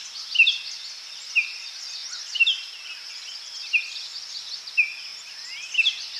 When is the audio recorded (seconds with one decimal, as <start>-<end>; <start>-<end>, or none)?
0.0-6.2

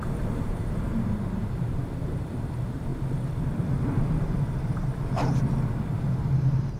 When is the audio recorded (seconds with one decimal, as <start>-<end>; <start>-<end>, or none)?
none

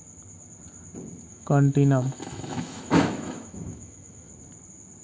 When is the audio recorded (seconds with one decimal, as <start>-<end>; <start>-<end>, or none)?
0.0-1.3; 4.3-5.0